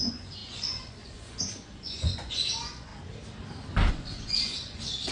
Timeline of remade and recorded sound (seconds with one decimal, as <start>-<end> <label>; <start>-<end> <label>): 0.0-2.9 remade; 2.9-3.9 recorded; 3.9-5.1 remade